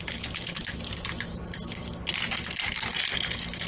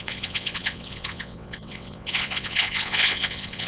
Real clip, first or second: first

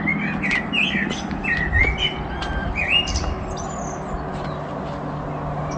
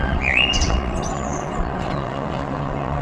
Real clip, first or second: first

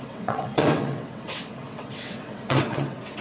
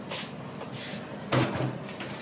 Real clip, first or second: second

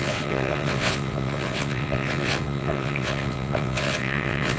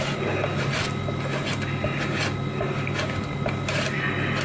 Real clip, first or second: second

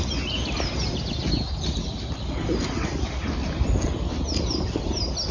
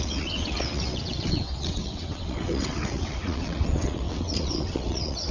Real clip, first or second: first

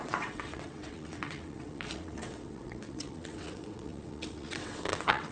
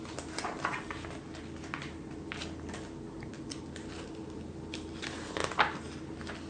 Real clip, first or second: second